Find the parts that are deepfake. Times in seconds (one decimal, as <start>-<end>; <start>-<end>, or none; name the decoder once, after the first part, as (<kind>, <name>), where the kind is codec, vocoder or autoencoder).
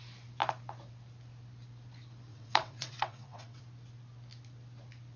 2.3-3.6 (vocoder, WaveNeXt)